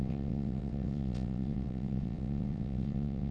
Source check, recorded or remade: remade